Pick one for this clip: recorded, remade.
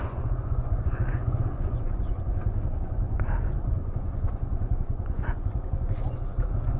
remade